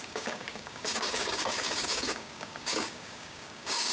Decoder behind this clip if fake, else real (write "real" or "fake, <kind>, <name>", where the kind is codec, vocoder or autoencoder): fake, codec, DAC